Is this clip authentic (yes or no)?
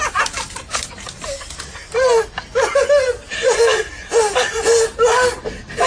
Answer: yes